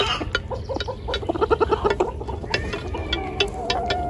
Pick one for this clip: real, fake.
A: real